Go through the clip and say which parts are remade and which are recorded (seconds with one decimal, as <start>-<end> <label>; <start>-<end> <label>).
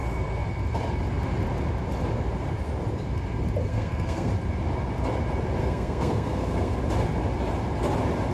0.0-3.7 recorded; 3.7-4.3 remade; 4.3-5.6 recorded; 5.6-6.8 remade; 6.8-8.3 recorded